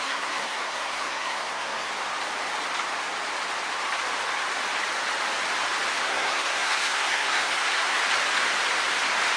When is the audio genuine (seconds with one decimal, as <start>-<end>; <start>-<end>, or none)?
1.9-6.0; 8.0-9.4